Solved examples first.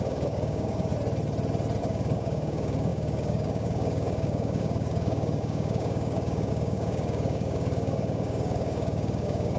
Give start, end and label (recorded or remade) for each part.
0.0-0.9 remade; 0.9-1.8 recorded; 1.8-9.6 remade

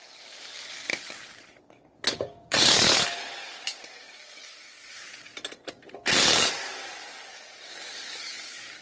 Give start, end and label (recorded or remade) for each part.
0.0-0.9 remade; 0.9-1.6 recorded; 1.6-5.3 remade; 5.3-6.4 recorded; 6.4-8.8 remade

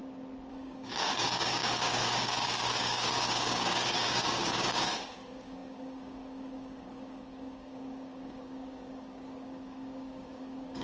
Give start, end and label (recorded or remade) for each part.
0.0-0.5 recorded; 0.5-10.8 remade

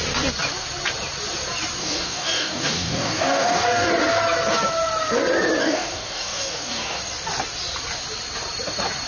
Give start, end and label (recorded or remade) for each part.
0.0-1.8 recorded; 1.8-3.9 remade; 3.9-5.6 recorded; 5.6-7.0 remade; 7.0-9.1 recorded

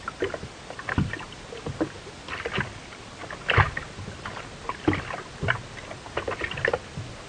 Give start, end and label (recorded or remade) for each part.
0.0-7.3 recorded

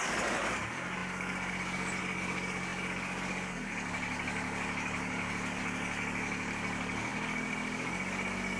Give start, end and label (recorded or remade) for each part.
0.0-8.6 remade